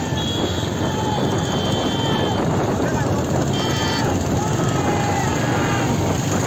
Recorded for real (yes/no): no